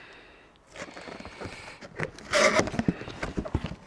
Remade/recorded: recorded